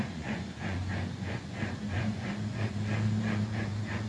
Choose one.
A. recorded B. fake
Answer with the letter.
B